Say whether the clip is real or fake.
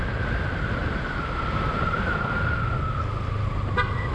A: real